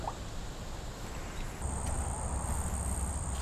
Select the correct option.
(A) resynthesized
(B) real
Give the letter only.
B